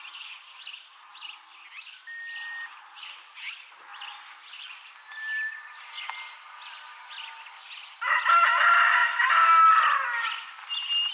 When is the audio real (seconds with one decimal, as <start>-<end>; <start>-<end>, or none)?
0.0-11.1